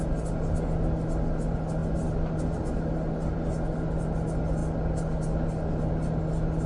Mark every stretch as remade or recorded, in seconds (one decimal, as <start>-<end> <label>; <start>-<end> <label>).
0.0-6.7 recorded